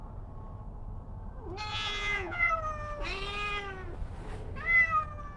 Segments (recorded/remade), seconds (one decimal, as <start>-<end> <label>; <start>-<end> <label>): 0.0-1.7 recorded; 1.7-2.5 remade; 2.5-5.4 recorded